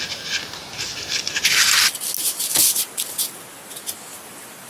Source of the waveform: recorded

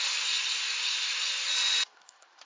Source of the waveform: recorded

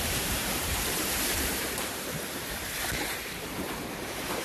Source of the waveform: remade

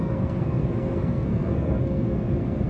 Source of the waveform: remade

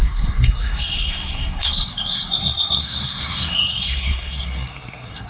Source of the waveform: remade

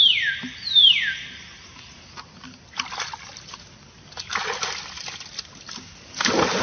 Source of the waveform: recorded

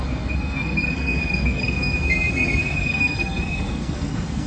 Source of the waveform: remade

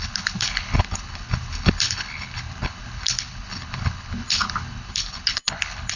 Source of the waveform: remade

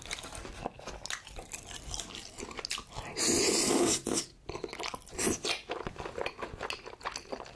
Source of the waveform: recorded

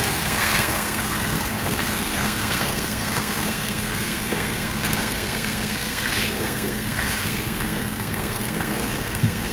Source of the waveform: remade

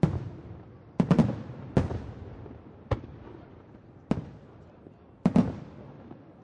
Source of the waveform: recorded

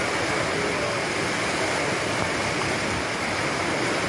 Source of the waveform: recorded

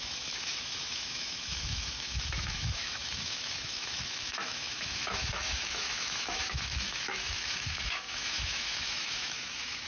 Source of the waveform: remade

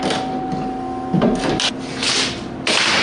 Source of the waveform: recorded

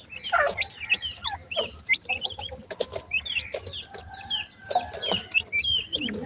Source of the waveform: recorded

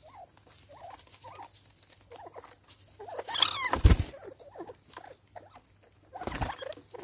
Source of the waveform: recorded